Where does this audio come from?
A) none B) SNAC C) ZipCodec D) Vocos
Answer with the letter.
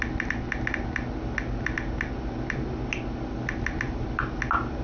A